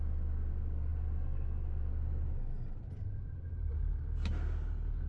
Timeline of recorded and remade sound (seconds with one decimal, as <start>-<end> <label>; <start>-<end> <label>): 0.0-5.1 recorded